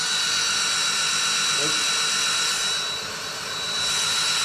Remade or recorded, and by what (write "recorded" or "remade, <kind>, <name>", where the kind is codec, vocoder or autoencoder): recorded